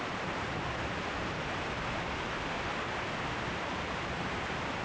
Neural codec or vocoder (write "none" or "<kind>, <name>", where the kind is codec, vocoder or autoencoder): none